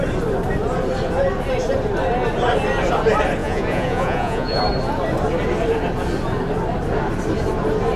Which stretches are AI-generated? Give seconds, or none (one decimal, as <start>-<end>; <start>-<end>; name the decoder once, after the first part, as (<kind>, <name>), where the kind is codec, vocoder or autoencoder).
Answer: 3.4-4.6 (vocoder, Vocos)